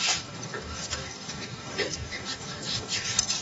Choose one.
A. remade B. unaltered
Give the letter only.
A